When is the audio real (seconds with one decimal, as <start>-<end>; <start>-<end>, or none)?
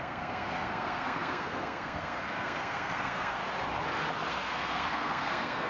3.4-4.3